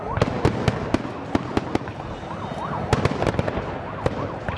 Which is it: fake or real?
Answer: real